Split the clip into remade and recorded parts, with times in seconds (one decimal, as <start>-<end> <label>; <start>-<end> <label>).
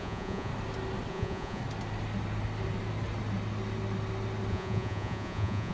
0.0-0.5 remade; 0.5-1.1 recorded; 1.1-1.6 remade; 1.6-4.5 recorded; 4.5-5.7 remade